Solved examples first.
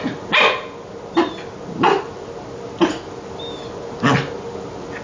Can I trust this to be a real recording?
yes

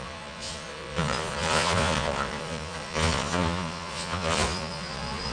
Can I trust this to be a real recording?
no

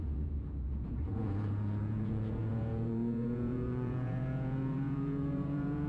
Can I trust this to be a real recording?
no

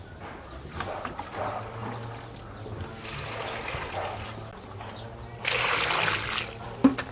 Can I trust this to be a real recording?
yes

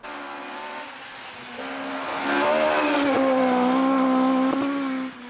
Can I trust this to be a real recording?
yes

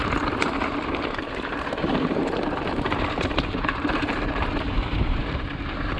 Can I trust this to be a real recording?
no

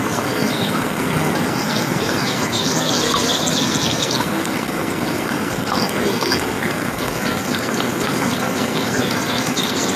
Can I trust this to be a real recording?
no